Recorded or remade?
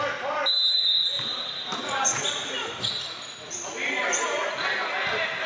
recorded